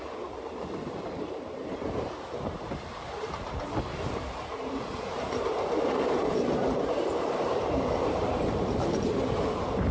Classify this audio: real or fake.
fake